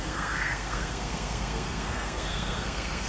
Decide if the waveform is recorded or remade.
remade